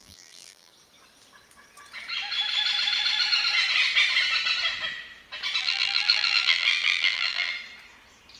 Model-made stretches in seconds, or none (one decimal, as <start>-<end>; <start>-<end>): 0.0-0.7; 5.6-7.5